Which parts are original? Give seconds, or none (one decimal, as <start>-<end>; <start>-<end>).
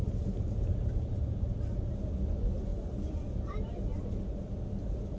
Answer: 0.0-5.2